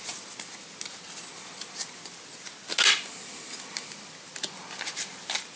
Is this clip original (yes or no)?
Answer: yes